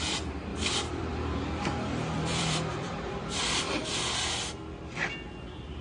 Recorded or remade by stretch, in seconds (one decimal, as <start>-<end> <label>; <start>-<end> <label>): 0.0-0.5 recorded; 0.5-4.0 remade; 4.0-5.8 recorded